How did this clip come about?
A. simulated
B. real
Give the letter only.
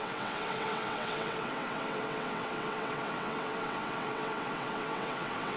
A